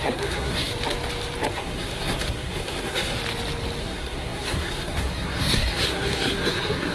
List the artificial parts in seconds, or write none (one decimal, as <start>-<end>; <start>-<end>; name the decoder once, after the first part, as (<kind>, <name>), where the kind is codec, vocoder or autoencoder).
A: 0.0-0.7 (codec, SNAC); 1.5-3.2; 3.8-6.9